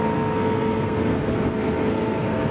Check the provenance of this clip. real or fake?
fake